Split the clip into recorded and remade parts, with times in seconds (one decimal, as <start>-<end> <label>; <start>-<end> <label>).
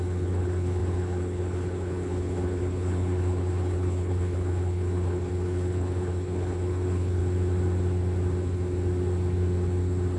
0.0-7.2 remade; 7.2-10.2 recorded